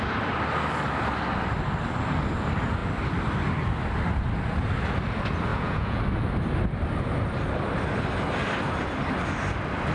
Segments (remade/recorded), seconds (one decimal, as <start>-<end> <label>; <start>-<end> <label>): 0.0-5.5 recorded; 5.5-6.0 remade; 6.0-9.9 recorded